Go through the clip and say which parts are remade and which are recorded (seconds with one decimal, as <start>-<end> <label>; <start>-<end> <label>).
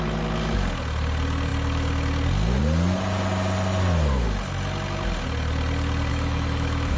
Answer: 0.0-6.1 recorded; 6.1-7.0 remade